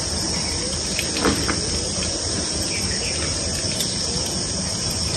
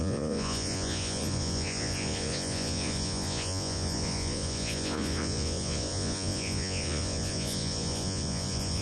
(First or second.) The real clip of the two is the first